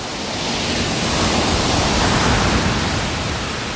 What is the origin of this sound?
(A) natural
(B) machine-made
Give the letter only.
A